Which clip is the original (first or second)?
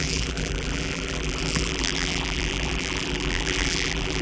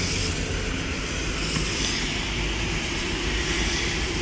second